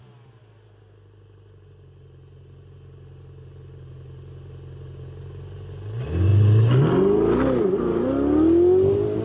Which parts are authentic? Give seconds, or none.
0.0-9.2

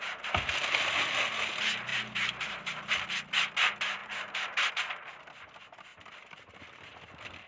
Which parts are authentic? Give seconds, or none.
0.0-4.0; 4.7-5.9